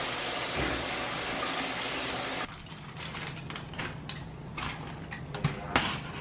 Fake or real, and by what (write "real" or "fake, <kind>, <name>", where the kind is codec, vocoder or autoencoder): real